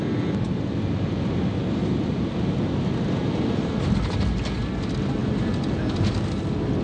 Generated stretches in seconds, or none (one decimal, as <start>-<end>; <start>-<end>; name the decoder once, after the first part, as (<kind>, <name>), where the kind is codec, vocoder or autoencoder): none